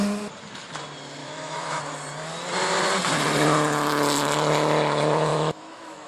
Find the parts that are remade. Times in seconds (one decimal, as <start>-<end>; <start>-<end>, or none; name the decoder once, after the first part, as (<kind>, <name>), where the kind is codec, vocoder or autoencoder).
1.2-1.8 (autoencoder, DAC-VAE); 5.3-6.1